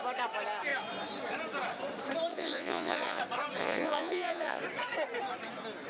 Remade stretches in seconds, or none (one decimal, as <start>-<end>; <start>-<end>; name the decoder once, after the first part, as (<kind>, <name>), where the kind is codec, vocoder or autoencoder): 2.3-3.2 (vocoder, Vocos); 3.6-4.6